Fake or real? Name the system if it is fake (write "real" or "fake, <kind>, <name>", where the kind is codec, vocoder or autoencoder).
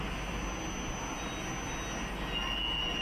real